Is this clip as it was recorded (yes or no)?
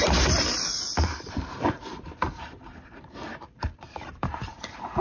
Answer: no